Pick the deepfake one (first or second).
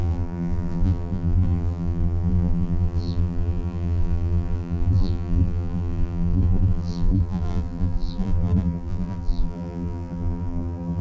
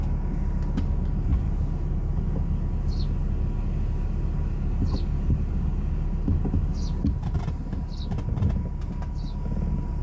first